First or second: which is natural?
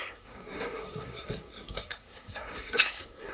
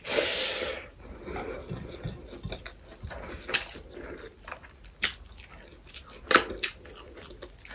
second